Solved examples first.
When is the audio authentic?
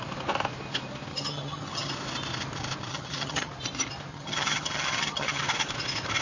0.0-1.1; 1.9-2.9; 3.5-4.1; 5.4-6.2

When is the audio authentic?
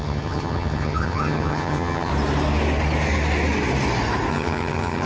2.1-4.3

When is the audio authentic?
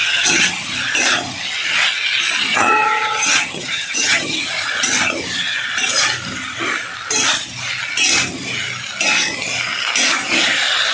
0.5-2.5; 4.4-10.9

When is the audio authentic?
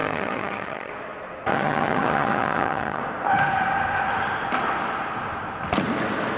0.9-1.5; 3.0-6.4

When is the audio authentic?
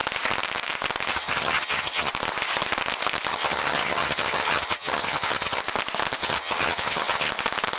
0.0-1.1; 2.1-3.3; 5.6-6.2; 7.3-7.8